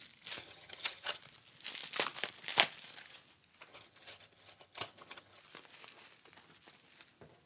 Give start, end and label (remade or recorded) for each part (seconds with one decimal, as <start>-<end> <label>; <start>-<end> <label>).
0.0-0.4 recorded; 0.4-1.2 remade; 1.2-3.7 recorded; 3.7-5.4 remade; 5.4-7.5 recorded